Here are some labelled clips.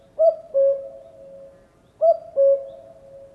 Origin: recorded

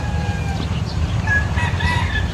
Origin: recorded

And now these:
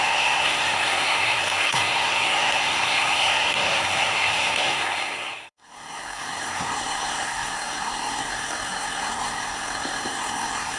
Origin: remade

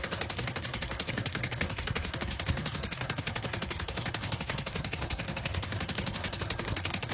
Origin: remade